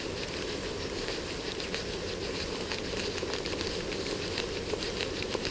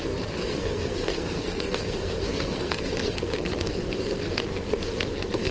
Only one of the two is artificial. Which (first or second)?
second